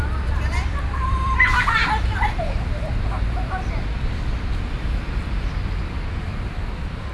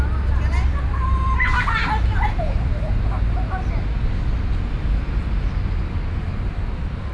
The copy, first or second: first